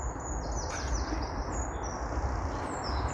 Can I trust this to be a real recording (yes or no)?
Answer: yes